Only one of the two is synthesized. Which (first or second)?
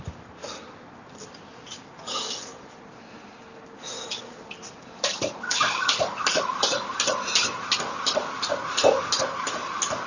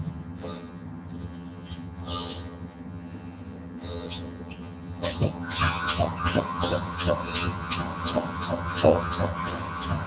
second